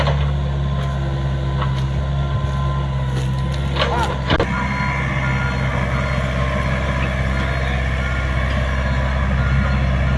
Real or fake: real